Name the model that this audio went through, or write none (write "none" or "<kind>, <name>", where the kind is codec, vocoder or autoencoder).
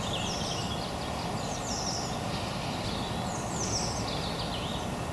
none